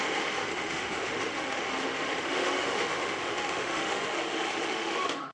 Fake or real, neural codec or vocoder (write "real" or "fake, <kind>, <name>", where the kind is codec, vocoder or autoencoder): fake, autoencoder, DAC-VAE